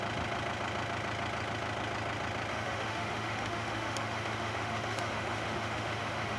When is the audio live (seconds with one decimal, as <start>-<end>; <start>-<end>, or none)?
0.0-2.5